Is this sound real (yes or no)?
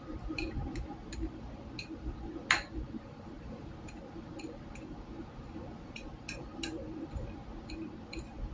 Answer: yes